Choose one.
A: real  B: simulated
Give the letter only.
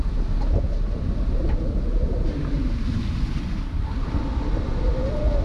A